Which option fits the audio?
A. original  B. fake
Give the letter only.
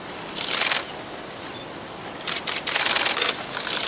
A